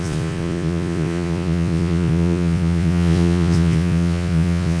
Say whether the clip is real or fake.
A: fake